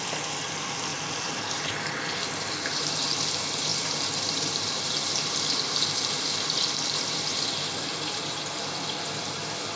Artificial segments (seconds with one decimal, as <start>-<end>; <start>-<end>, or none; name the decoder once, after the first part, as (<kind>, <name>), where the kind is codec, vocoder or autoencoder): 0.9-1.9 (vocoder, BigVGAN v2); 3.7-6.3